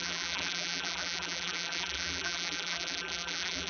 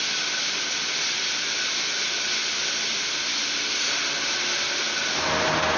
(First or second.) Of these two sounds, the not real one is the first